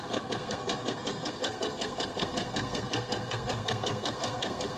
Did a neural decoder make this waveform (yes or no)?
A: yes